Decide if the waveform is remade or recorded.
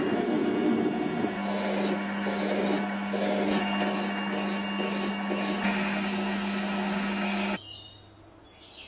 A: recorded